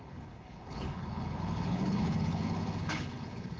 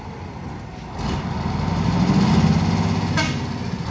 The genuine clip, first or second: second